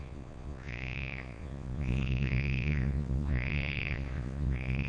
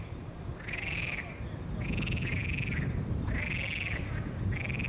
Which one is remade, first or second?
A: first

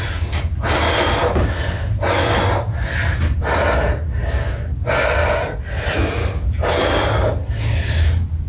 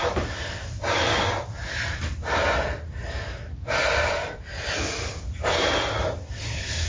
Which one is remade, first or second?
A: second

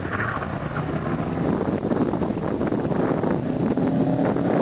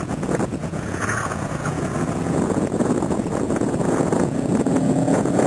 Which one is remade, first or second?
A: second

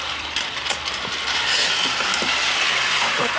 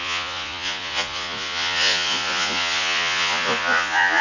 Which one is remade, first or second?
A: second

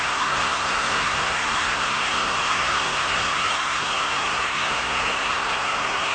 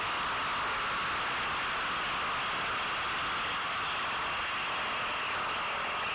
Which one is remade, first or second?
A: first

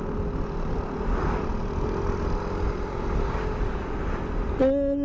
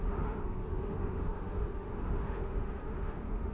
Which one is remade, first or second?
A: second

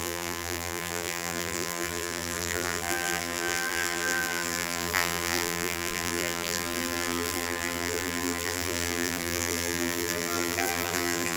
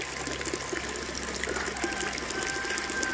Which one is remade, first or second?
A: first